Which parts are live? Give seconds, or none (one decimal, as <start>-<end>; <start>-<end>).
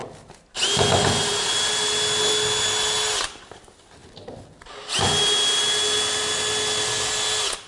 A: 0.0-7.7